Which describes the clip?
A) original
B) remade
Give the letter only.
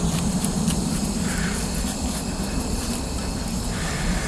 B